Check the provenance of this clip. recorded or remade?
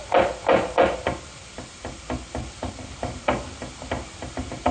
recorded